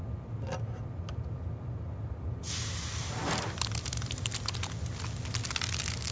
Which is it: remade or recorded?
recorded